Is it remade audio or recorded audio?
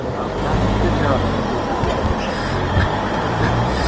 remade